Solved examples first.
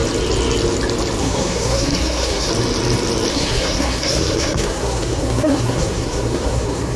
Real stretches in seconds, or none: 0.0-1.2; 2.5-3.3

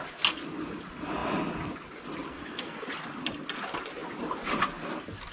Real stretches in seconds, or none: 0.0-2.3; 2.8-5.3

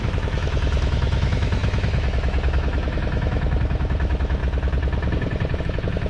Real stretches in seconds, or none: 4.4-5.6

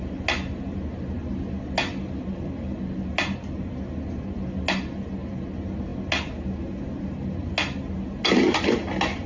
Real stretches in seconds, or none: 0.0-9.3

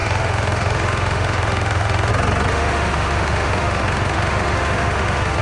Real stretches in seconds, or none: 2.1-2.5

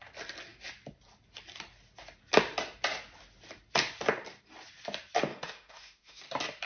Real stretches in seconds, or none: 0.0-5.3; 6.2-6.7